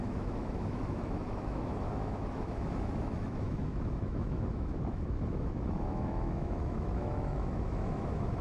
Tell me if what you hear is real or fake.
fake